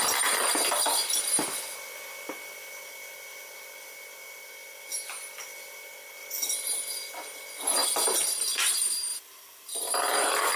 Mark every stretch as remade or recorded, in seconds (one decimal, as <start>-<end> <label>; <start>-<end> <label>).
0.0-6.2 recorded; 6.2-6.7 remade; 6.7-7.8 recorded; 7.8-8.7 remade; 8.7-9.1 recorded; 9.1-10.6 remade

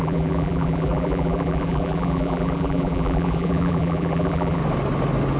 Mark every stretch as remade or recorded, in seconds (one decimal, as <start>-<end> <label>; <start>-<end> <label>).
0.0-4.6 remade; 4.6-5.4 recorded

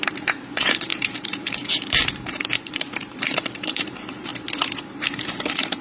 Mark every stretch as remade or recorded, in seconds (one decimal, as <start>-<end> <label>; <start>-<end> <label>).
0.0-4.3 remade; 4.3-4.8 recorded; 4.8-5.8 remade